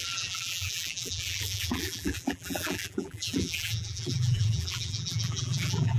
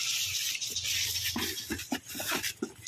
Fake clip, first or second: first